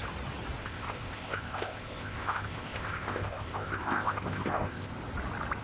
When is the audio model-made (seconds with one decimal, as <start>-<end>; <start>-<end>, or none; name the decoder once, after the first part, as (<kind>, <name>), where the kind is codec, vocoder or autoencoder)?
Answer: 0.6-4.9 (codec, ZipCodec)